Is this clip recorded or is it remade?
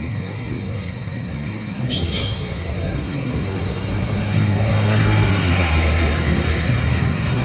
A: remade